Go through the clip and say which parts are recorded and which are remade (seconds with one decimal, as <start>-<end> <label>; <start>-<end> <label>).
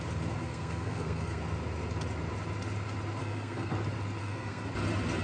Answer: 0.0-0.4 recorded; 0.4-1.4 remade; 1.4-3.2 recorded; 3.2-3.7 remade; 3.7-4.2 recorded; 4.2-4.7 remade; 4.7-5.2 recorded